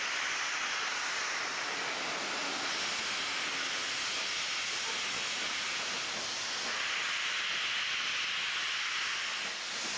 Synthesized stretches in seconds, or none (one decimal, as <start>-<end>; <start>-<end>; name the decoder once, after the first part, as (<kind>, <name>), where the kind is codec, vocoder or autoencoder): none